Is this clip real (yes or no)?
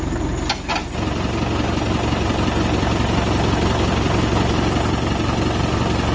yes